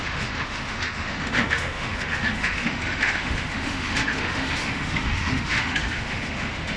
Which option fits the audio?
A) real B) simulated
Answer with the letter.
B